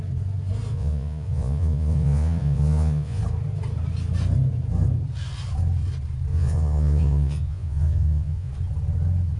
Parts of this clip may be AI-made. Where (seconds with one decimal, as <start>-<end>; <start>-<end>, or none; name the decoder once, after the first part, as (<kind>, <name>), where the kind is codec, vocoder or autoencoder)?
0.7-3.2 (vocoder, Vocos); 6.3-8.5